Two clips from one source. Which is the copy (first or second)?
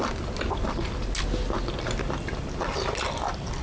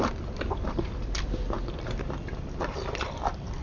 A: second